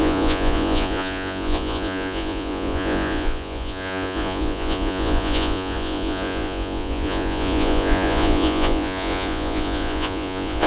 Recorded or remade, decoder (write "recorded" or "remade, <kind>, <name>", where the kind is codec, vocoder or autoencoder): remade, vocoder, Vocos